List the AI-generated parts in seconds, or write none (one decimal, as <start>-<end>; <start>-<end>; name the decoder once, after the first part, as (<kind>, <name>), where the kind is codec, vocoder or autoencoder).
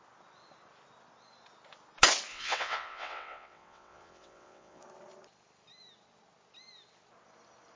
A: 2.3-4.8 (vocoder, WaveNeXt)